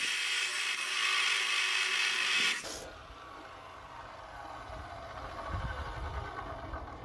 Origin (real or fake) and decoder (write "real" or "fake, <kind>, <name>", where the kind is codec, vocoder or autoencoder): real